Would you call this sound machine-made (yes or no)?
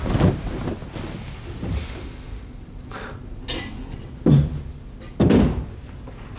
no